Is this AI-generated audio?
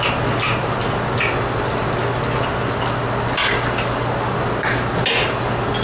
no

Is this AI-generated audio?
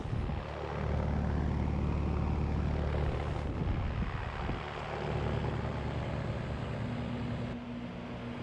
no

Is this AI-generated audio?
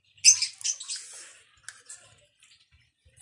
no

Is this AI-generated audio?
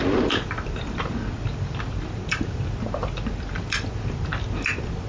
yes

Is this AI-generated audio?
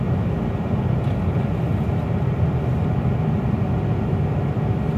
no